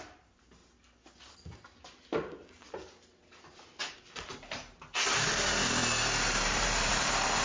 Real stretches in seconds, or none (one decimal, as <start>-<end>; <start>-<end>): 0.6-4.3; 5.8-6.5

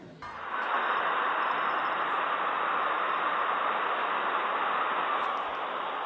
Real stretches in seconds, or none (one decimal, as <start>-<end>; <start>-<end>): 0.0-6.1